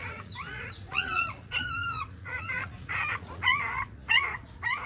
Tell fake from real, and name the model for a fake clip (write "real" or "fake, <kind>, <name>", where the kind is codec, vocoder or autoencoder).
fake, vocoder, Vocos